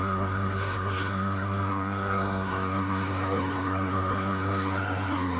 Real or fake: fake